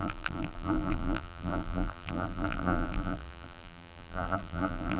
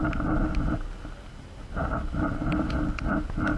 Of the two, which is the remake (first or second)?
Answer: first